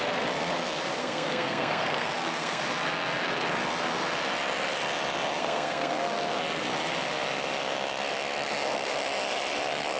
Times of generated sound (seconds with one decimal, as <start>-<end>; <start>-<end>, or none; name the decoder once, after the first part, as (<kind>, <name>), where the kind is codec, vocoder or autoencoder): 1.0-2.6 (codec, SNAC); 5.4-6.4